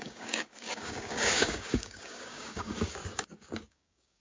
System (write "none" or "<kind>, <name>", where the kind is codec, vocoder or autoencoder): codec, DAC